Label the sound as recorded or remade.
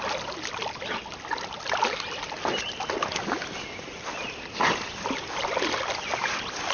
recorded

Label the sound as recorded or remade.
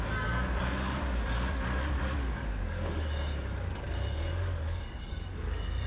remade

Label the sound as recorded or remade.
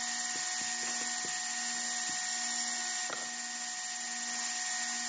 recorded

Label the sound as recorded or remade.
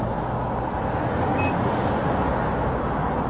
recorded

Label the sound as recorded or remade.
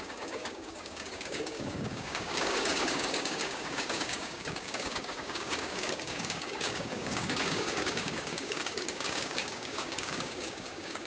remade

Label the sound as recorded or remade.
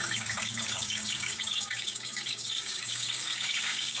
remade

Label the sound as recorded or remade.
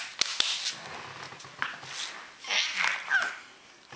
recorded